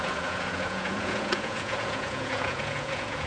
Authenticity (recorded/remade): remade